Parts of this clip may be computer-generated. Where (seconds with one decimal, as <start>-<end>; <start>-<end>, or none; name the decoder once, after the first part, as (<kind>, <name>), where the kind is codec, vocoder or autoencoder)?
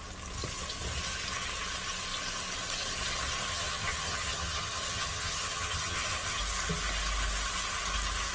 3.5-6.4 (vocoder, HiFi-GAN)